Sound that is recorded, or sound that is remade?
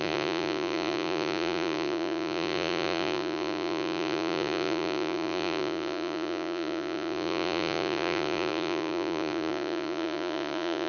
remade